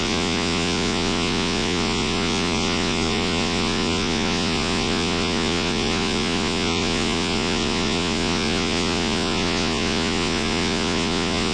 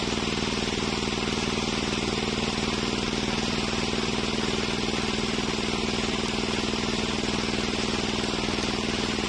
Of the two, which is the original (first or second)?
second